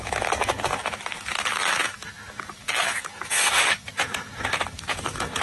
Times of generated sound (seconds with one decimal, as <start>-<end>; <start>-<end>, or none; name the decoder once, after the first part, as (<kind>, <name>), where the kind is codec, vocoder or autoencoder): 0.0-5.4 (autoencoder, DAC-VAE)